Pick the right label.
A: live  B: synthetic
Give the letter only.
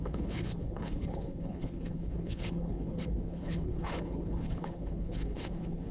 B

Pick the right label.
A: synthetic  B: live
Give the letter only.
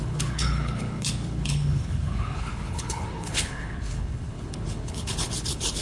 A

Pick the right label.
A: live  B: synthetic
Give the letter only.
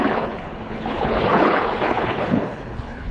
B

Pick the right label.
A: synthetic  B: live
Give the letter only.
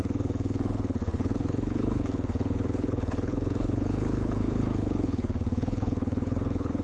A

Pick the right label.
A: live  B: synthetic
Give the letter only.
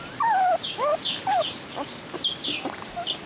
A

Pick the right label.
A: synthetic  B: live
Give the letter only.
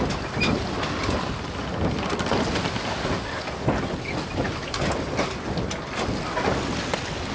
B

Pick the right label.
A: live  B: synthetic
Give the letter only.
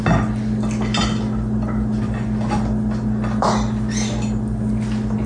A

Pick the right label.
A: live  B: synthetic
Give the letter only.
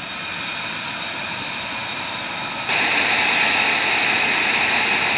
A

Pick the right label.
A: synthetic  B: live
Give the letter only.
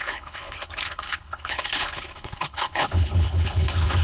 A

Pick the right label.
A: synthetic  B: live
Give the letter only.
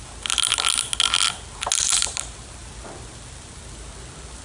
B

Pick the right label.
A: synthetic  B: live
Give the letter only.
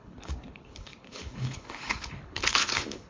A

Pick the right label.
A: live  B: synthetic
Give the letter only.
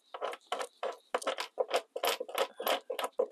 A